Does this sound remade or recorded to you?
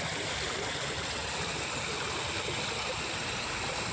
recorded